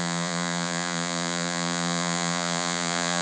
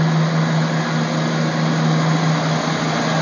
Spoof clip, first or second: first